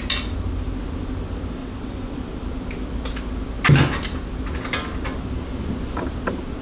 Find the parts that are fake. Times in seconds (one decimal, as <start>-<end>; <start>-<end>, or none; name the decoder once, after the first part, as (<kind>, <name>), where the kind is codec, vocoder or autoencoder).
1.6-2.2 (vocoder, WaveNeXt)